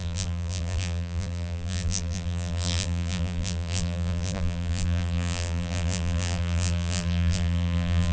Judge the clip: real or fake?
fake